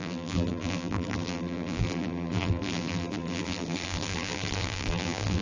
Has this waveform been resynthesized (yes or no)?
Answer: yes